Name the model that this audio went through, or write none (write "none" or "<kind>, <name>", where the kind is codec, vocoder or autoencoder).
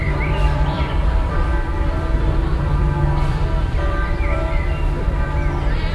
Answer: vocoder, BigVGAN v2